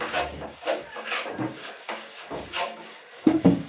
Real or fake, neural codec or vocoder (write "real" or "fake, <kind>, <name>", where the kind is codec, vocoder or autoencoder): fake, codec, DAC